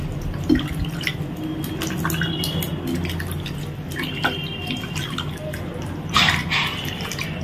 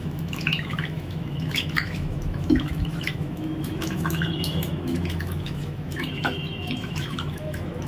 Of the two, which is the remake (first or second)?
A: second